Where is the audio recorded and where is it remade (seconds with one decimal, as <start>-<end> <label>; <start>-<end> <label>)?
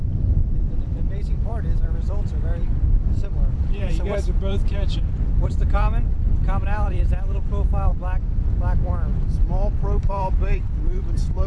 0.0-7.9 remade; 7.9-8.4 recorded; 8.4-9.1 remade; 9.1-10.1 recorded; 10.1-11.5 remade